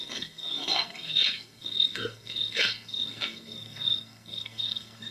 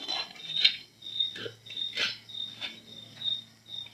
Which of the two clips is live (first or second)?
second